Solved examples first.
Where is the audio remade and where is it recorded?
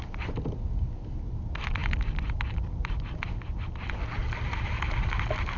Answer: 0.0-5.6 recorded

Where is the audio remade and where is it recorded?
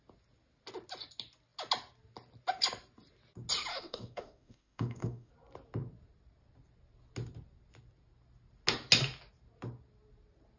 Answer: 0.0-3.7 recorded; 3.7-5.3 remade; 5.3-10.6 recorded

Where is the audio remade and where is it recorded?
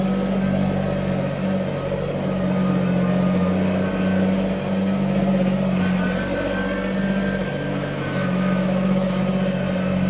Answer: 0.0-7.4 recorded; 7.4-9.2 remade; 9.2-10.1 recorded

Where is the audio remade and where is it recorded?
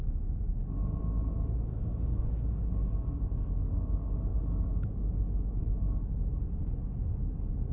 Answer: 0.0-1.7 recorded; 1.7-2.5 remade; 2.5-7.7 recorded